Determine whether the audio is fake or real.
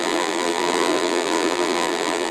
fake